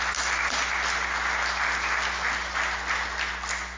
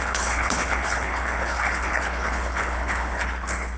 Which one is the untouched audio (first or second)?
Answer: first